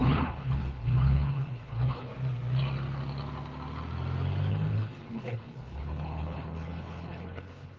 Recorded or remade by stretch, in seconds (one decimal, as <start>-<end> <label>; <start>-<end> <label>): 0.0-2.1 remade; 2.1-4.5 recorded; 4.5-7.8 remade